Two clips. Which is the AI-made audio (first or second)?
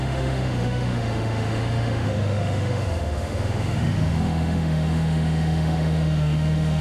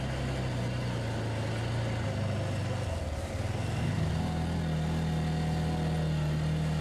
first